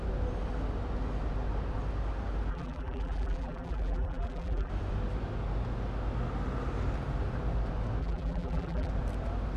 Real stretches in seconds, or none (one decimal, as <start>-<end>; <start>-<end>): 0.0-2.5; 4.7-8.0; 8.9-9.6